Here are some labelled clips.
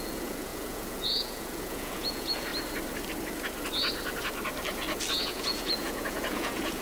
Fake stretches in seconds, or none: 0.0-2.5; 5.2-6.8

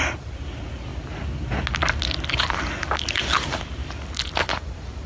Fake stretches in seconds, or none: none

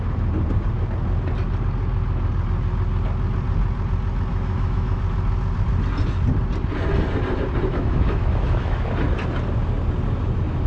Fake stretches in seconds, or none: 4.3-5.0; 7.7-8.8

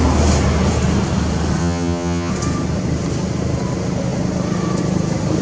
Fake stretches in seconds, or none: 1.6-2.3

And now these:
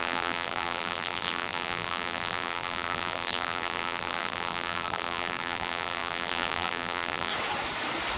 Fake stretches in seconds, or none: 0.0-7.3

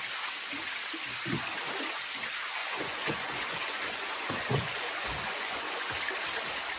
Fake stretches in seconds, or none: 2.6-5.9

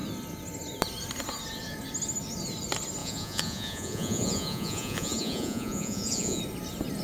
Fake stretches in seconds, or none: 3.0-6.4